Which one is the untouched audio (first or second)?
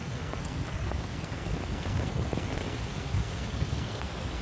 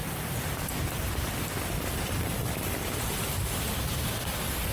second